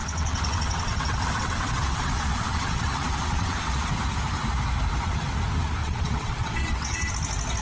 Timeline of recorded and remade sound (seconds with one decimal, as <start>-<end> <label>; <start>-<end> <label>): 0.0-3.9 remade; 3.9-5.8 recorded; 5.8-7.1 remade; 7.1-7.6 recorded